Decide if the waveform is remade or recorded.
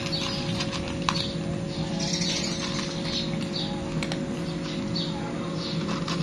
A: recorded